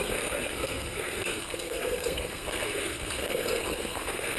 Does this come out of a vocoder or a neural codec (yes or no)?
yes